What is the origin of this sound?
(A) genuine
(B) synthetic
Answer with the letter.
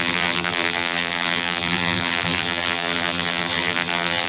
B